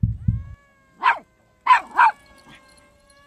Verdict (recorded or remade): recorded